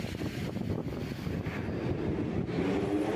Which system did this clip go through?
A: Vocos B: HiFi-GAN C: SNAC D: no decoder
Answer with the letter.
D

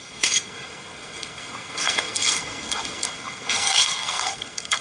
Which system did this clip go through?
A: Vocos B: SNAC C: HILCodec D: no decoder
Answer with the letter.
B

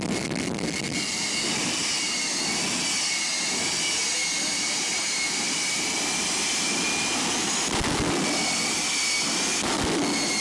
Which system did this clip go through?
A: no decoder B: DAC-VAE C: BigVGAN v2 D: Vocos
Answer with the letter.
A